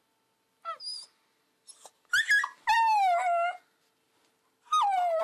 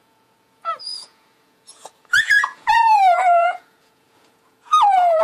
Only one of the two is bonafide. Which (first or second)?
first